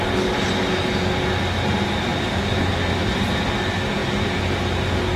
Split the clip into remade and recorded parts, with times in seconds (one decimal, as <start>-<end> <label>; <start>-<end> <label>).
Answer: 0.0-5.2 recorded